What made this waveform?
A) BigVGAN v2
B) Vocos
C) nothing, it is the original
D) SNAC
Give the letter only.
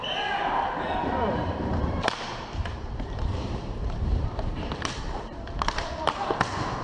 A